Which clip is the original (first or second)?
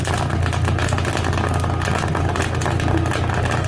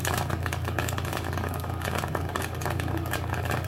first